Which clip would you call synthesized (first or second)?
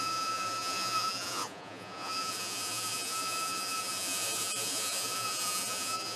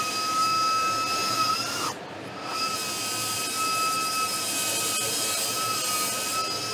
first